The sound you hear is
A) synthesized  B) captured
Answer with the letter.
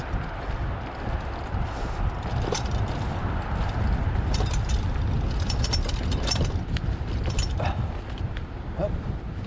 B